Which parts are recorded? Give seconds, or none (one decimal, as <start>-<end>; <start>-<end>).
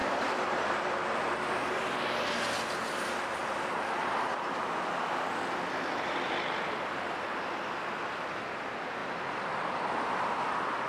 0.5-3.4; 4.3-5.3; 6.7-9.0; 9.9-10.9